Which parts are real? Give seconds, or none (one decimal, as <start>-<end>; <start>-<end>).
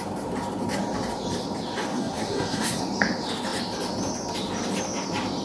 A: 0.0-1.9; 2.8-5.4